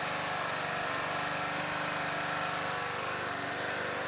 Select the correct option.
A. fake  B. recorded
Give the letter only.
B